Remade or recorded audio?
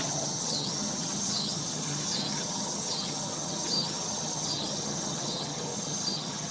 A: remade